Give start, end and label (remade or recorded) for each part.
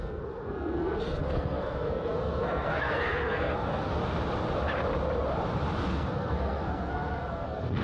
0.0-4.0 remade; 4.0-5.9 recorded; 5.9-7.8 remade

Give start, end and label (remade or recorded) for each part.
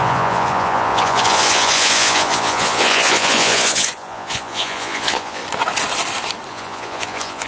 0.0-5.4 remade; 5.4-6.5 recorded; 6.5-7.5 remade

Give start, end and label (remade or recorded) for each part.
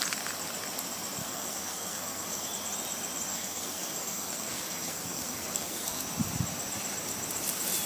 0.0-1.2 recorded; 1.2-2.5 remade; 2.5-3.3 recorded; 3.3-6.0 remade; 6.0-7.9 recorded